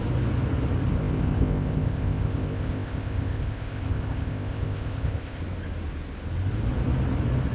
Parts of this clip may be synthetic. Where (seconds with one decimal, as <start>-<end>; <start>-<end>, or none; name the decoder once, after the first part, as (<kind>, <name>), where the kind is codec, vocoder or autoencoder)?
0.9-5.4 (codec, ZipCodec)

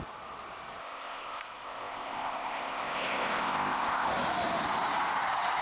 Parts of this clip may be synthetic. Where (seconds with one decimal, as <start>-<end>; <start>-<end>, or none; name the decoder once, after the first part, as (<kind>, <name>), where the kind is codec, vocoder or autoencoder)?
0.8-4.1 (codec, ZipCodec)

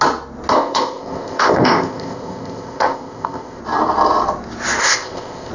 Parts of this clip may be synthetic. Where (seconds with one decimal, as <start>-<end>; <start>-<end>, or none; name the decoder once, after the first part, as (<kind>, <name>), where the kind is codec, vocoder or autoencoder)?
0.5-3.6 (codec, ZipCodec); 4.8-5.5